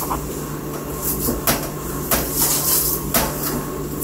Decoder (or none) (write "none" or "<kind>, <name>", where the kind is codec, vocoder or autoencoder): none